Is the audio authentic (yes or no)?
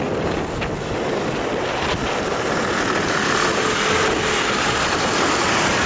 yes